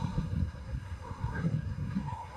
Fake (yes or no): yes